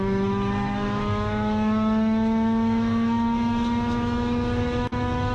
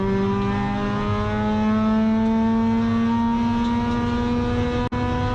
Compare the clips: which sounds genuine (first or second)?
second